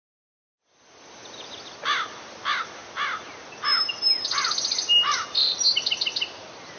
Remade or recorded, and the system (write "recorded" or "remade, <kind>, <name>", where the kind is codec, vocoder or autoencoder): recorded